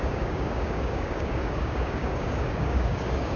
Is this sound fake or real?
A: fake